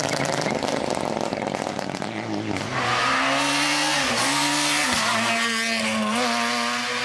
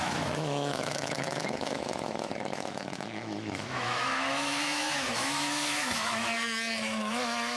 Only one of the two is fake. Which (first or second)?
second